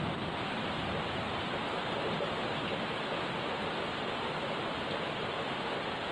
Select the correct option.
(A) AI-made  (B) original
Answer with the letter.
B